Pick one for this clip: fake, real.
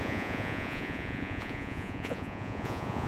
fake